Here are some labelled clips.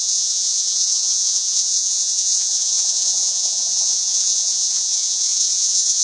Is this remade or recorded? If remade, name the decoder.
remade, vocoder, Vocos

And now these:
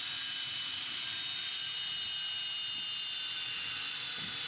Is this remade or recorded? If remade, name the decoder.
recorded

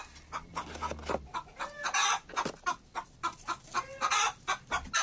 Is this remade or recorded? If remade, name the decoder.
recorded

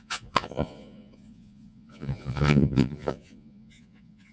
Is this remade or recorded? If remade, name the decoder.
remade, vocoder, Vocos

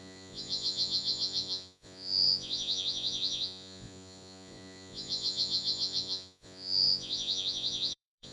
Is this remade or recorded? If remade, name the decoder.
remade, vocoder, Vocos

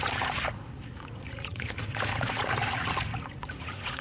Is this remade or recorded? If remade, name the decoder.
remade, vocoder, Vocos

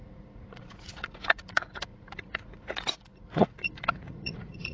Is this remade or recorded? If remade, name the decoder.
remade, vocoder, Vocos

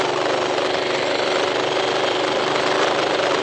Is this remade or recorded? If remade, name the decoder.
recorded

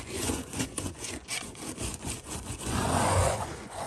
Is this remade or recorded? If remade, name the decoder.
remade, vocoder, Vocos